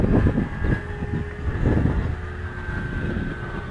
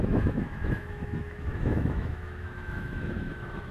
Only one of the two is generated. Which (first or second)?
second